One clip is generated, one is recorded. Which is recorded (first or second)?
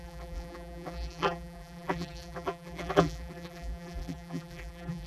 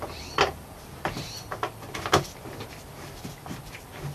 second